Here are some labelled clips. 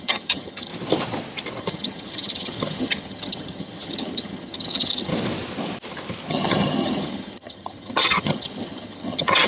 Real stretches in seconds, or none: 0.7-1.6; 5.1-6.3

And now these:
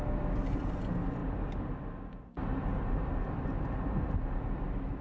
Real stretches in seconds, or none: 0.0-5.0

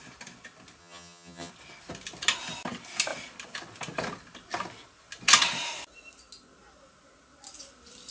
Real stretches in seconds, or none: 0.0-0.8; 1.5-8.1

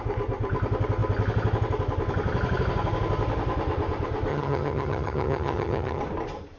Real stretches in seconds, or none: 0.0-4.3; 6.0-6.6

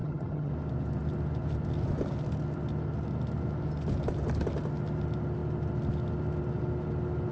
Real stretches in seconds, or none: 0.5-7.3

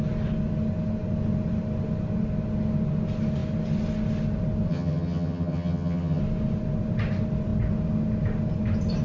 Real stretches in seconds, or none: 0.0-4.7; 6.2-9.0

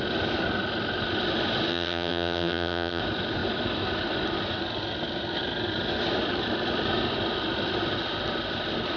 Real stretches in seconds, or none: 0.0-1.7; 3.0-9.0